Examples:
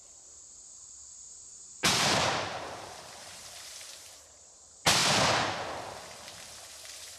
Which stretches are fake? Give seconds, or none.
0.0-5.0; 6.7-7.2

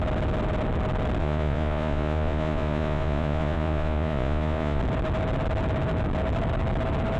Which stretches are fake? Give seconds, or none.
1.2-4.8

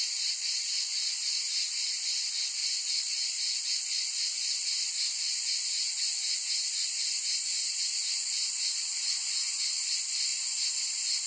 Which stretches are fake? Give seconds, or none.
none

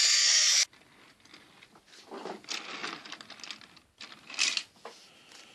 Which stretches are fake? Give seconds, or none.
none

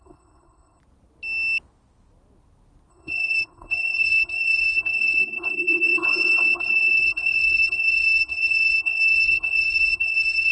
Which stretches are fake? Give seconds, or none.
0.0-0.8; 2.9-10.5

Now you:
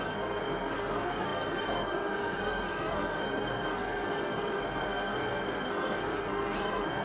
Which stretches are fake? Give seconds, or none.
0.0-7.0

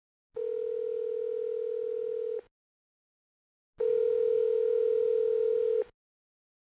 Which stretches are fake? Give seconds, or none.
3.7-5.8